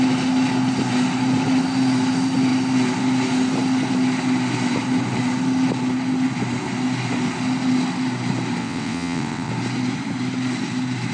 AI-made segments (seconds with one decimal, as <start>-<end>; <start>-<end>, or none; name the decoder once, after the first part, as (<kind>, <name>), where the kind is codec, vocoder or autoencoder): 8.6-9.5 (vocoder, WaveNeXt)